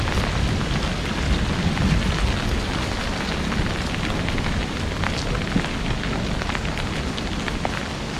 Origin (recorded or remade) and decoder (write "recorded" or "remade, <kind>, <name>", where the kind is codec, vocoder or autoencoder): recorded